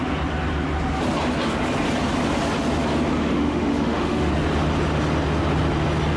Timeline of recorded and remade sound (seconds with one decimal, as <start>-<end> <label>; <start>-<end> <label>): 0.0-3.2 recorded; 3.2-4.3 remade; 4.3-6.2 recorded